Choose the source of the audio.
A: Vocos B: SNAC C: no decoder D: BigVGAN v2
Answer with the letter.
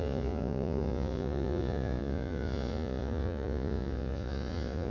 A